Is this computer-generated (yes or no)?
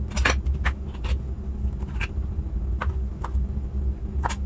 no